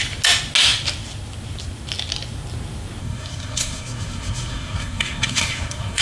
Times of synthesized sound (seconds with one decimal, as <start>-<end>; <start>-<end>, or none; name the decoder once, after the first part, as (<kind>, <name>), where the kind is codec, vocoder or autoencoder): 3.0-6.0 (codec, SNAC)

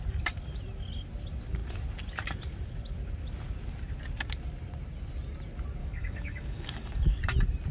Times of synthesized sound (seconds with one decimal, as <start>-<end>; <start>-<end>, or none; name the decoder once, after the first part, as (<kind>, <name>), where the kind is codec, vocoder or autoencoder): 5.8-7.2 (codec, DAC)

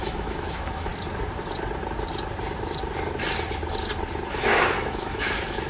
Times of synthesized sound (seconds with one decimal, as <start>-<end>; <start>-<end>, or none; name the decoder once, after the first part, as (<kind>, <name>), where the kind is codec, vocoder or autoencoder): 0.0-0.9 (autoencoder, DAC-VAE); 4.3-5.7

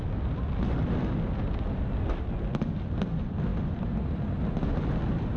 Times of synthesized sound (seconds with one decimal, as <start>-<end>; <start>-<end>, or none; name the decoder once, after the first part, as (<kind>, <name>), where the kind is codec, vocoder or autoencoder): none